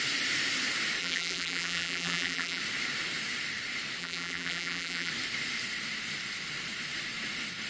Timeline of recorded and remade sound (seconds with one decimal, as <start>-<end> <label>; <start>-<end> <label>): 0.0-1.0 recorded; 1.0-2.6 remade; 2.6-4.0 recorded; 4.0-5.1 remade; 5.1-7.7 recorded